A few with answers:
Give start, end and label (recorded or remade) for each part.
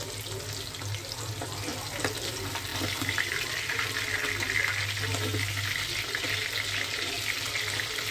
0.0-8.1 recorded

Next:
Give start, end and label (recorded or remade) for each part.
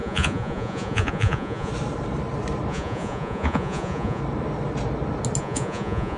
0.0-1.7 remade; 1.7-2.7 recorded; 2.7-4.2 remade; 4.2-5.4 recorded; 5.4-6.2 remade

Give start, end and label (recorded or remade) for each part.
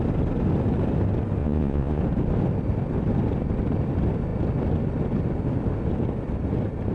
0.0-1.4 recorded; 1.4-2.0 remade; 2.0-6.9 recorded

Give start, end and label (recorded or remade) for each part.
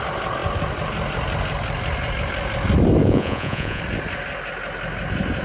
0.0-3.0 recorded; 3.0-3.8 remade; 3.8-5.4 recorded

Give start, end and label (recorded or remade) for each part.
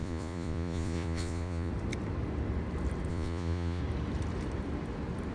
0.0-1.7 remade; 1.7-3.1 recorded; 3.1-3.8 remade; 3.8-5.3 recorded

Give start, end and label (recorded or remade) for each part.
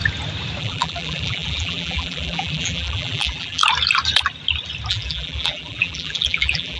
0.0-0.6 recorded; 0.6-3.6 remade; 3.6-4.9 recorded; 4.9-6.8 remade